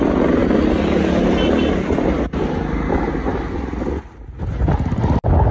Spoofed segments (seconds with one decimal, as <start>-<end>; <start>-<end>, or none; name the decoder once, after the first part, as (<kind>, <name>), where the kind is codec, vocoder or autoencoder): none